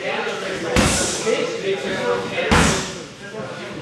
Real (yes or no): no